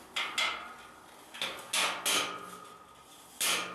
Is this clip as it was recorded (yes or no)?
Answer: yes